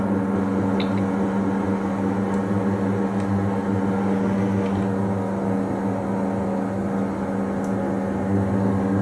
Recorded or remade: recorded